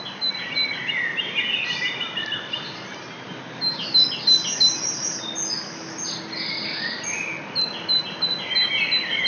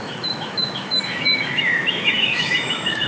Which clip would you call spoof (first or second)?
second